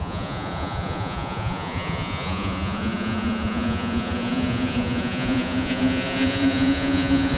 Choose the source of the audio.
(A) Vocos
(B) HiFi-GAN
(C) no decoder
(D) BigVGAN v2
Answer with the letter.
A